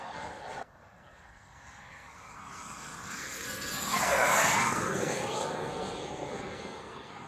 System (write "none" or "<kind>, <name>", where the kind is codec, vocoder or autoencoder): codec, SNAC